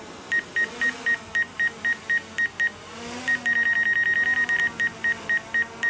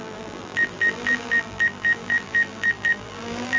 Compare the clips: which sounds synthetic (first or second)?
second